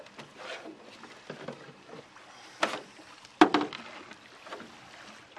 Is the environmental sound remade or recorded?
recorded